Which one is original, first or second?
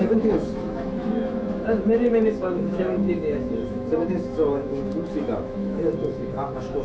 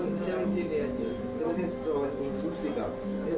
second